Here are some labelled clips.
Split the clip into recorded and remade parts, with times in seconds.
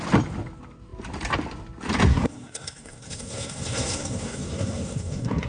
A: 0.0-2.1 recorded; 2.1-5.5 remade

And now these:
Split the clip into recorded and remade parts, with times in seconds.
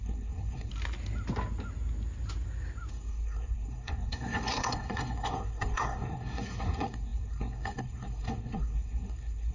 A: 0.0-0.7 remade; 0.7-2.9 recorded; 2.9-9.5 remade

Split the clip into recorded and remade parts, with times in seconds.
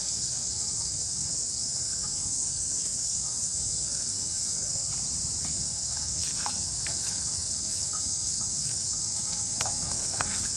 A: 0.0-4.9 remade; 4.9-5.4 recorded; 5.4-10.6 remade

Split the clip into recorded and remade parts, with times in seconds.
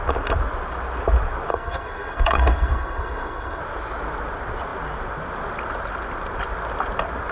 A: 0.0-1.5 recorded; 1.5-3.6 remade; 3.6-7.3 recorded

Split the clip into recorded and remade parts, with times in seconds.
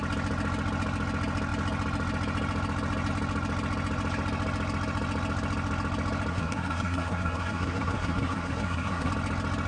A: 0.0-6.3 recorded; 6.3-9.1 remade; 9.1-9.7 recorded